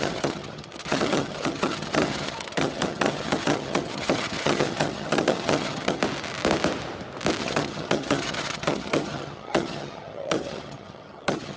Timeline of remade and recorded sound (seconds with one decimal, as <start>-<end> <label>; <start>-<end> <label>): 0.0-6.0 remade; 6.0-7.4 recorded; 7.4-11.6 remade